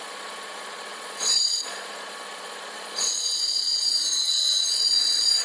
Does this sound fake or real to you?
fake